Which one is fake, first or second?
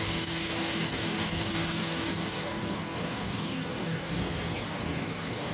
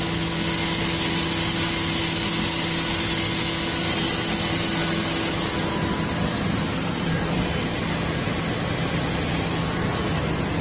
first